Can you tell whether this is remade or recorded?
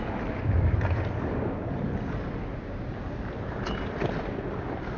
recorded